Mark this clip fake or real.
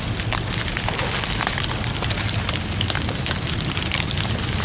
real